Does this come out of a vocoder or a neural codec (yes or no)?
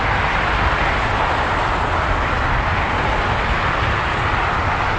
no